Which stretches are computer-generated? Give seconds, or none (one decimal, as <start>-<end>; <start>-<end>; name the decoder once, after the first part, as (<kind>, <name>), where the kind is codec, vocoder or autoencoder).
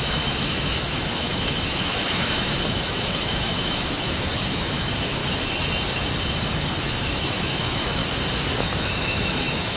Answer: 0.0-5.2 (autoencoder, DAC-VAE); 6.8-8.0; 8.6-9.8